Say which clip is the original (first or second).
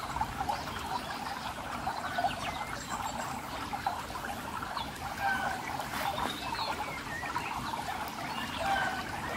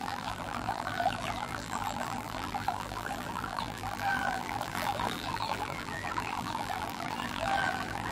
first